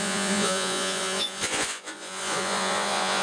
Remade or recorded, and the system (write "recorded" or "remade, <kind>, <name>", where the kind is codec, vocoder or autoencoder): remade, vocoder, Vocos